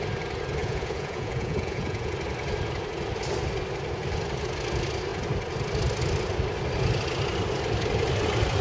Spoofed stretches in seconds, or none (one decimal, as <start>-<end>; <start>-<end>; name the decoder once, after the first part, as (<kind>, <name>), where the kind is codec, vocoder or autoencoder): 0.6-2.1 (vocoder, Vocos)